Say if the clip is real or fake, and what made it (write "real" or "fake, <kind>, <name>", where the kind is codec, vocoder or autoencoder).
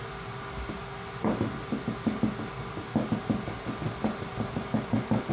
real